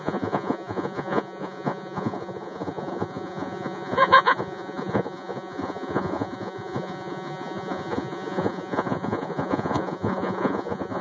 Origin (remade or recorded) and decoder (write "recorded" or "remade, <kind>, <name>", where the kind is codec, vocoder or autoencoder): remade, vocoder, Vocos